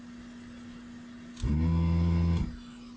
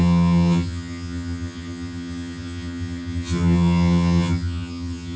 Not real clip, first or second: second